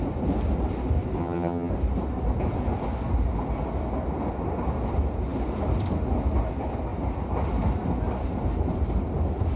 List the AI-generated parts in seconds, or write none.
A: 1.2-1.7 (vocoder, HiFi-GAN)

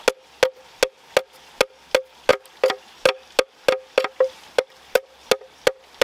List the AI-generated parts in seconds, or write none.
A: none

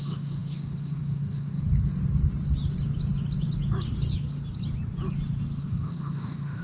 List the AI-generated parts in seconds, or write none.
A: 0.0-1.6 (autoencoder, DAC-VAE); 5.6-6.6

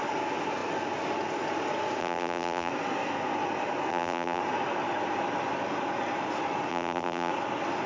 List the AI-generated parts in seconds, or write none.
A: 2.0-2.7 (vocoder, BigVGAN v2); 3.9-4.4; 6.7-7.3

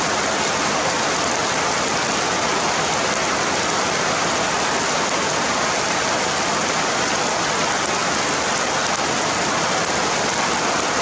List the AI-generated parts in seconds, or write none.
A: 0.0-8.0 (vocoder, BigVGAN v2); 9.0-11.0